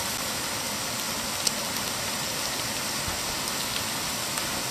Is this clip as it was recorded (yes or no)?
yes